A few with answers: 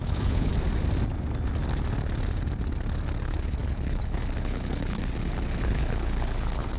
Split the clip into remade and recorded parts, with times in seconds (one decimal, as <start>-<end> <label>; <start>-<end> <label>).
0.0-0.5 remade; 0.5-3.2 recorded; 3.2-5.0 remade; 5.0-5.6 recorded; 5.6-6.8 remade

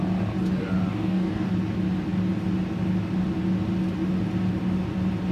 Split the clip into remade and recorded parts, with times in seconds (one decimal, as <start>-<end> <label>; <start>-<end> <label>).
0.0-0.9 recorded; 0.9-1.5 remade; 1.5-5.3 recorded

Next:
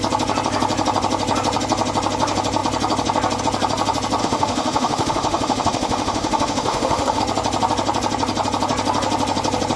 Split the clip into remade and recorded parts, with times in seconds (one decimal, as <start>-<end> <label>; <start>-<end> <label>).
0.0-4.2 recorded; 4.2-7.2 remade; 7.2-9.8 recorded

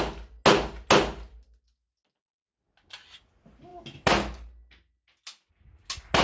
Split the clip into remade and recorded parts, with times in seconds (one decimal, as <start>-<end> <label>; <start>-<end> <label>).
0.0-6.2 recorded

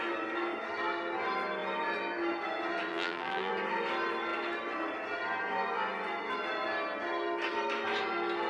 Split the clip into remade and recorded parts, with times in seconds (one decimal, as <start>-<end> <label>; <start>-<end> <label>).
0.0-2.9 recorded; 2.9-3.5 remade; 3.5-8.5 recorded

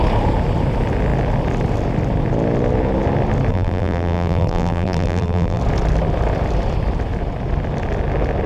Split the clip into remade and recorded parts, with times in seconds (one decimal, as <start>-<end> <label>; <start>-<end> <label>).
0.0-3.5 recorded; 3.5-5.6 remade; 5.6-8.5 recorded

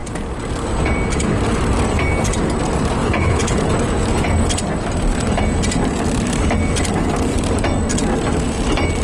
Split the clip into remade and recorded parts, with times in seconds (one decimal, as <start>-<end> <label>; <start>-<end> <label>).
0.0-3.0 recorded; 3.0-3.7 remade; 3.7-9.0 recorded

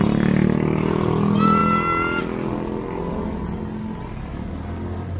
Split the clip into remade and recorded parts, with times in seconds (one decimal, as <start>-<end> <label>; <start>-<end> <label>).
0.0-5.2 recorded